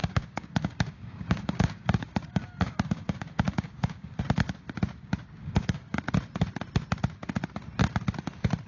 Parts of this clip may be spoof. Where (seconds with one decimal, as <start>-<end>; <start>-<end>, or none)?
0.0-4.2; 5.4-6.0